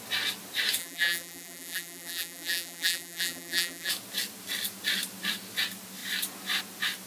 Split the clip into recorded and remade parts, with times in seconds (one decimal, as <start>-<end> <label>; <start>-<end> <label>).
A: 0.0-0.8 recorded; 0.8-3.9 remade; 3.9-7.1 recorded